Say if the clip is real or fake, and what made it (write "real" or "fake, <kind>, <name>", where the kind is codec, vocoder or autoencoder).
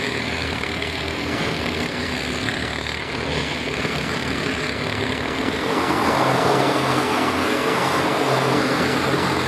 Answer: fake, codec, SNAC